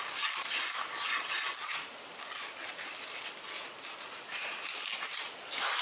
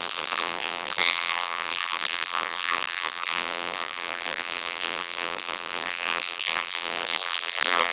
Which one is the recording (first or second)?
first